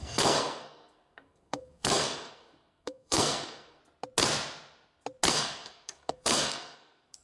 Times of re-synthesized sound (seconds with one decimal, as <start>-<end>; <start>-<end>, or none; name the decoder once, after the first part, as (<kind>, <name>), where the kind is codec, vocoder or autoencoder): 0.0-3.8 (codec, SNAC); 5.3-7.2